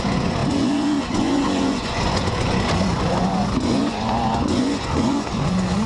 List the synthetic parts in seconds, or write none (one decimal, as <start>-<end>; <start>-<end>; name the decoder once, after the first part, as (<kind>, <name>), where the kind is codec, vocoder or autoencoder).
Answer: 0.0-5.9 (vocoder, Vocos)